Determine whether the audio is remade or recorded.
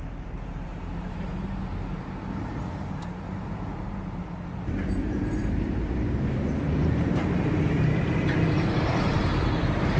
remade